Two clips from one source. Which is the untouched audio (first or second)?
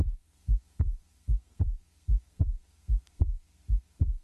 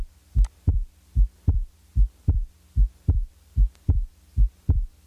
second